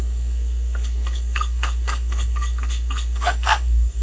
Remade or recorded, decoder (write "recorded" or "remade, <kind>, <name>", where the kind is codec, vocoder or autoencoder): remade, codec, SNAC